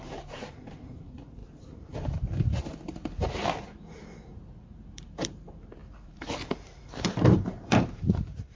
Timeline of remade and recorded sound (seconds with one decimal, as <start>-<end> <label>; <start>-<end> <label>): 0.0-8.6 remade